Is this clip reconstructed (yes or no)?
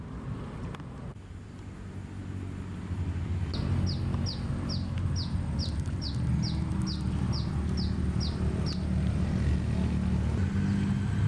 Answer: no